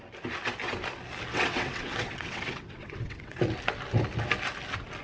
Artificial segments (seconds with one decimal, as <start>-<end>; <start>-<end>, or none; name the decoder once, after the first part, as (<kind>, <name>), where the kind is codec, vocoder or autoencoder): 1.3-3.4 (vocoder, WaveNeXt)